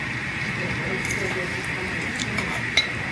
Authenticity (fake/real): real